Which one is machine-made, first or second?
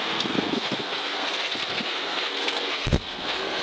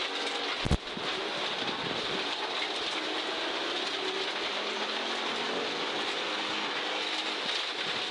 first